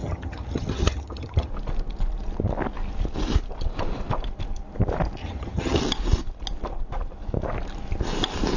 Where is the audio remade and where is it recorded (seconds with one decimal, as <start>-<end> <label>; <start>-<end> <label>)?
0.0-1.5 remade; 1.5-5.2 recorded; 5.2-5.8 remade; 5.8-8.6 recorded